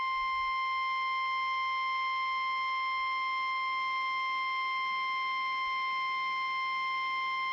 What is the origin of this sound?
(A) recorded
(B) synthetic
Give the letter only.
A